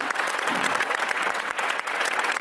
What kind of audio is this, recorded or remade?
remade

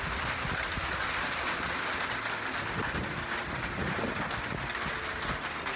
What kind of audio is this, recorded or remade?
recorded